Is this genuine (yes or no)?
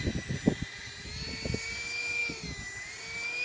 yes